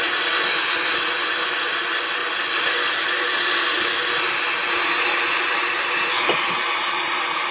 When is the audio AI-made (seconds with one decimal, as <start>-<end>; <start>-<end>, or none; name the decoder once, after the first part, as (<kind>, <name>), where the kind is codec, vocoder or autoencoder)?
none